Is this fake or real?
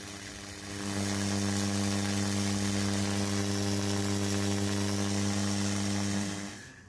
real